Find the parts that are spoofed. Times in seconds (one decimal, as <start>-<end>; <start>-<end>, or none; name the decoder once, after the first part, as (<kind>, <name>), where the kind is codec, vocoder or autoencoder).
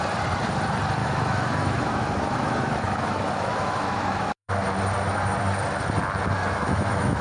1.0-4.5 (autoencoder, DAC-VAE); 6.4-7.2